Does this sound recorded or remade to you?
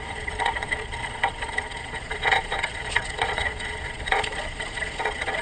remade